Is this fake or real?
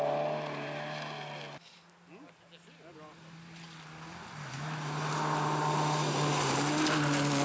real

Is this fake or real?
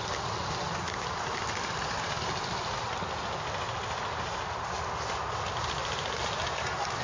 real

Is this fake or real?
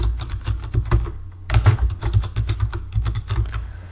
fake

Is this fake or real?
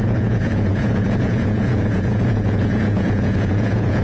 fake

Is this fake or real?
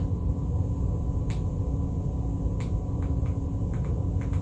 real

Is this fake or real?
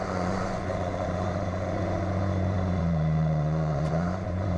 fake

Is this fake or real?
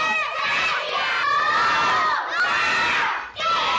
fake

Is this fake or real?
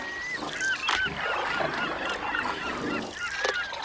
real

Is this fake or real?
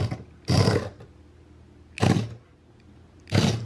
real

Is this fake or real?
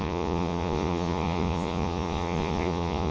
fake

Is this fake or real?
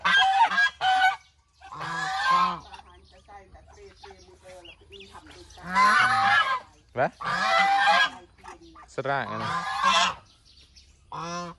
real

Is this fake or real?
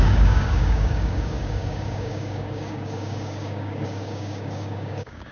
fake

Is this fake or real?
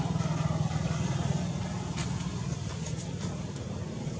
real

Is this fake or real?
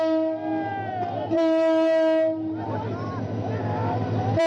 real